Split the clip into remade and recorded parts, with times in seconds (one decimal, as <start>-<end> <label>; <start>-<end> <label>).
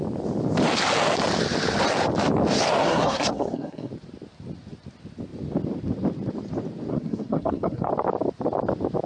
0.0-2.8 recorded; 2.8-3.9 remade; 3.9-6.9 recorded; 6.9-7.9 remade; 7.9-9.1 recorded